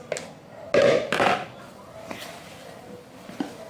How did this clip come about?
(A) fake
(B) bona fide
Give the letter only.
B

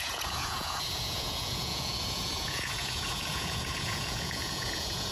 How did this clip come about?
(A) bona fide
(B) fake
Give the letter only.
B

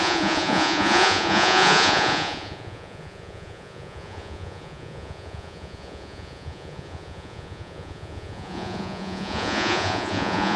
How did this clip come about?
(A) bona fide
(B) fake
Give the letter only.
B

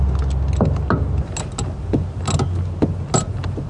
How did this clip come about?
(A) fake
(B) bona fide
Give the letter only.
B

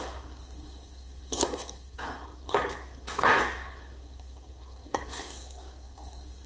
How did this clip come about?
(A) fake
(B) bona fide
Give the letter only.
A